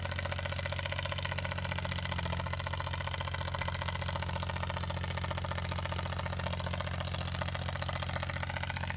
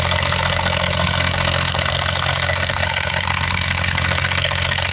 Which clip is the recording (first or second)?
first